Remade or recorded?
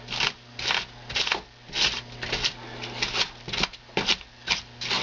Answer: recorded